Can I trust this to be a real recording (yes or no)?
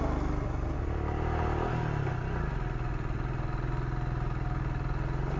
yes